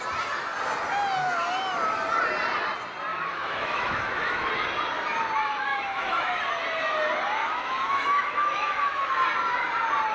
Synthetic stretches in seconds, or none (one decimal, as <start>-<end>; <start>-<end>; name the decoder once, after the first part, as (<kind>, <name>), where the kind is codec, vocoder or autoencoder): 3.1-4.5 (autoencoder, DAC-VAE); 5.7-6.4; 7.4-9.1